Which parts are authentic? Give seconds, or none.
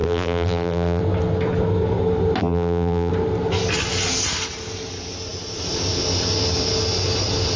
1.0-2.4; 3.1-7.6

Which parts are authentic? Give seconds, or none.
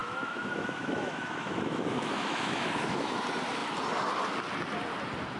3.2-5.4